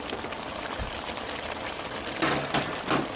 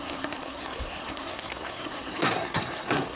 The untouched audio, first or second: first